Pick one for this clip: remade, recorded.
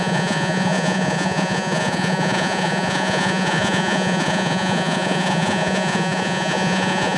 remade